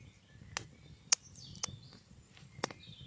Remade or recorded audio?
recorded